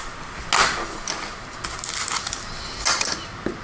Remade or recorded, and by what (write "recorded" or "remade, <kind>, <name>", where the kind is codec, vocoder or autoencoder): recorded